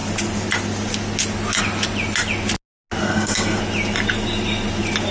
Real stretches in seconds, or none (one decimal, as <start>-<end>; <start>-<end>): 0.0-3.0; 3.6-5.1